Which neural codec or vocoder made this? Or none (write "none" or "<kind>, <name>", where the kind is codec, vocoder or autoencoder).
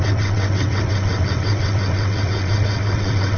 vocoder, WaveNeXt